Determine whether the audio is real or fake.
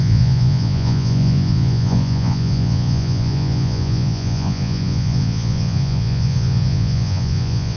fake